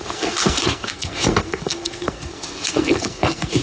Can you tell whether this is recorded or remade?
remade